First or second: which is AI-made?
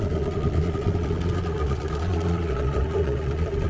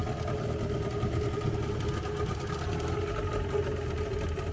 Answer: first